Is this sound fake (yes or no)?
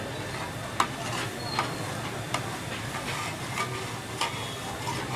no